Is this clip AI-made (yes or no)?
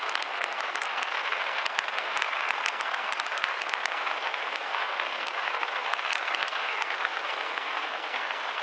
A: yes